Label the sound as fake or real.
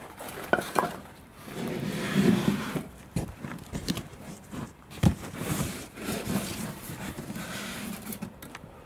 fake